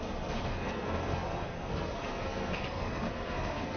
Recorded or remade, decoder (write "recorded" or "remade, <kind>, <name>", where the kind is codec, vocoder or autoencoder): remade, codec, SNAC